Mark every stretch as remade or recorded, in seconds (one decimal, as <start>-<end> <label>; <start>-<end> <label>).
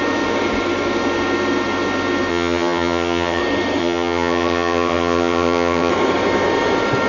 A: 0.0-2.3 recorded; 2.3-3.4 remade; 3.4-3.8 recorded; 3.8-5.9 remade; 5.9-7.1 recorded